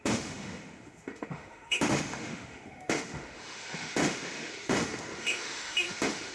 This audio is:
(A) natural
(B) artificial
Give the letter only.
B